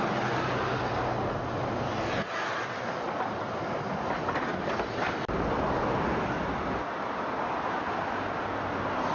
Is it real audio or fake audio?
real